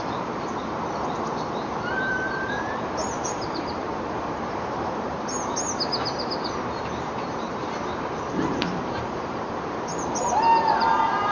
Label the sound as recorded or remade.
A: remade